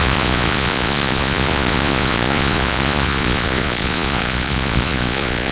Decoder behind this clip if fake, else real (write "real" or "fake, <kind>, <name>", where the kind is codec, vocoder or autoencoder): fake, vocoder, Vocos